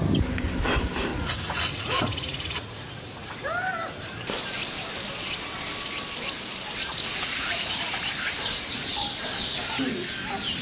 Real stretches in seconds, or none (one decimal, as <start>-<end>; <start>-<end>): 0.0-1.1; 3.3-6.9; 8.0-10.6